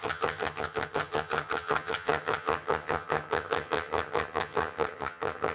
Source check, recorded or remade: remade